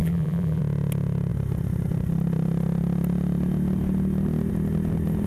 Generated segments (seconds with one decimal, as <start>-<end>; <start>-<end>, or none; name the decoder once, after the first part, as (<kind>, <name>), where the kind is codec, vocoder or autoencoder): 0.0-0.6 (vocoder, BigVGAN v2)